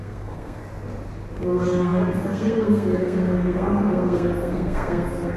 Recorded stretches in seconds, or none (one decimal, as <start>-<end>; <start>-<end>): 0.6-1.4